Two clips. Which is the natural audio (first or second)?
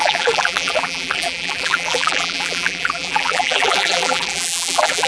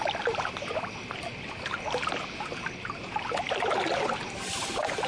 second